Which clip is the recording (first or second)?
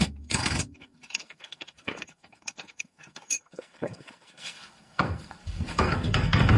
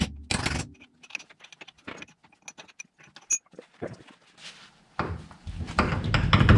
second